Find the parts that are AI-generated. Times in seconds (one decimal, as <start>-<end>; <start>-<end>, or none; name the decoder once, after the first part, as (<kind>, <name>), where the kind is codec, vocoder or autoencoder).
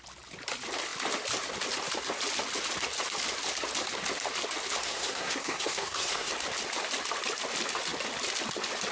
4.8-6.3 (codec, SNAC)